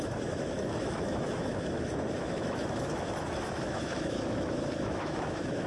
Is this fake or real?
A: fake